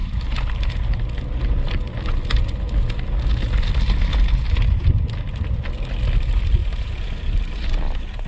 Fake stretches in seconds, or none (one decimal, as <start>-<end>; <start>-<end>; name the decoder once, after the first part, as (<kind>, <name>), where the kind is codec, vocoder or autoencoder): 0.0-0.9 (vocoder, BigVGAN v2); 6.6-7.7